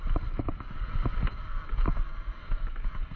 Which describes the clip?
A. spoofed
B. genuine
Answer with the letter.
B